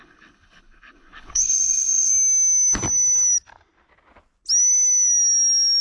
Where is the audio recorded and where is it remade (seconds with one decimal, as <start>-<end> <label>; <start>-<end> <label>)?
0.0-2.1 remade; 2.1-5.8 recorded